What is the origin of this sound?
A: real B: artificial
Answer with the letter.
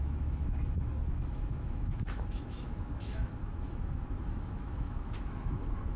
B